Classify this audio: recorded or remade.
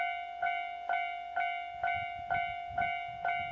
recorded